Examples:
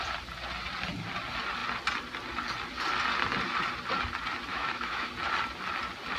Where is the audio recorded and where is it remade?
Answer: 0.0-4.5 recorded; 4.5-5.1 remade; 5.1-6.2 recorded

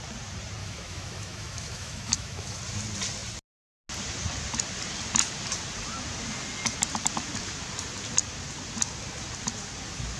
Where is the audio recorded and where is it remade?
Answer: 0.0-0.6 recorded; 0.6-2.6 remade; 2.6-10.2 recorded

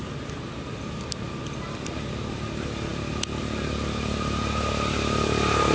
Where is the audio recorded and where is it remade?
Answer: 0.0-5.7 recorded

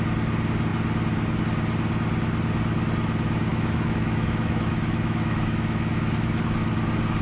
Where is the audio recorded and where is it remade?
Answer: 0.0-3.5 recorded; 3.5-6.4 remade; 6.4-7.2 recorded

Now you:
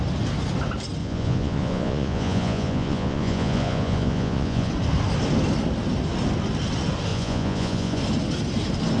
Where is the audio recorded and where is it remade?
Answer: 0.0-1.0 recorded; 1.0-4.7 remade; 4.7-7.1 recorded; 7.1-8.0 remade; 8.0-9.0 recorded

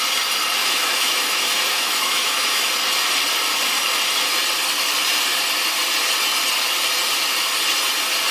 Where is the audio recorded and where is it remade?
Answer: 0.0-0.6 recorded; 0.6-2.7 remade; 2.7-8.3 recorded